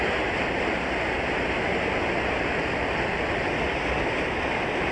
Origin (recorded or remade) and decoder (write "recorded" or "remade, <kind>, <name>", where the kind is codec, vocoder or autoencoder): remade, vocoder, BigVGAN v2